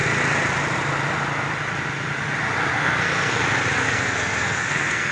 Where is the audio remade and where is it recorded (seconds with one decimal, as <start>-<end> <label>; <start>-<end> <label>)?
0.0-2.7 recorded; 2.7-3.4 remade; 3.4-3.8 recorded; 3.8-5.1 remade